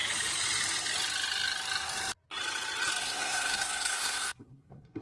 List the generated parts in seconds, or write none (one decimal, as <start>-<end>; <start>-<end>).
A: 3.0-5.0